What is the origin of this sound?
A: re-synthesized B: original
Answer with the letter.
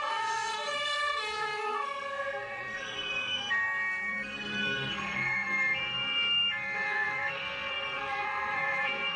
A